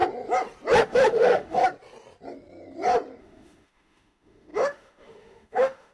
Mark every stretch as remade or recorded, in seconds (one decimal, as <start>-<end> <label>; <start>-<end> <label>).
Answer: 0.0-0.8 recorded; 0.8-1.6 remade; 1.6-3.2 recorded; 3.2-5.9 remade